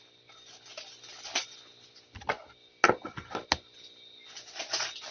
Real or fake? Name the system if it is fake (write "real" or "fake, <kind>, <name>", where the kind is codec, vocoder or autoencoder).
real